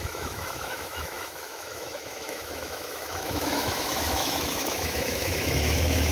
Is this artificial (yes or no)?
yes